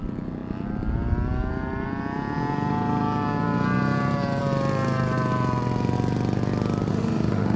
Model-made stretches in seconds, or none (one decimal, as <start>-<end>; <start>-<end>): 6.9-7.6